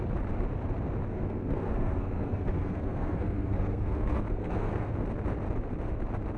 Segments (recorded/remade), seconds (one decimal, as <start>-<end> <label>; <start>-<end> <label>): 0.0-1.1 recorded; 1.1-4.9 remade; 4.9-6.4 recorded